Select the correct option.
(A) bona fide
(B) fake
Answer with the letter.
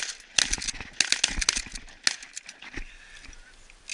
A